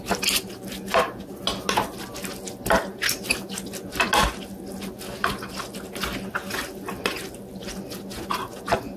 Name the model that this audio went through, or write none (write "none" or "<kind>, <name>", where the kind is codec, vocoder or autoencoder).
none